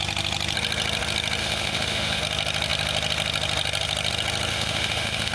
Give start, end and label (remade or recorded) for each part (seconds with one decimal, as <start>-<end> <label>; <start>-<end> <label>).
0.0-1.4 recorded; 1.4-2.2 remade; 2.2-4.5 recorded; 4.5-5.3 remade